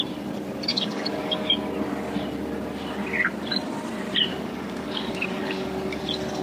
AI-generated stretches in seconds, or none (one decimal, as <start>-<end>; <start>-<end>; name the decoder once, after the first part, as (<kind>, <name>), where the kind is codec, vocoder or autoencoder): 0.7-1.5 (codec, DAC); 4.3-6.0